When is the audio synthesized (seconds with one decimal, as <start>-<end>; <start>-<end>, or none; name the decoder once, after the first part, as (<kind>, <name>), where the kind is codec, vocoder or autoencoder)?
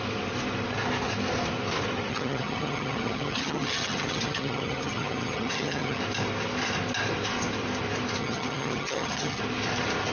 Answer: 2.1-6.0 (vocoder, HiFi-GAN); 8.2-9.4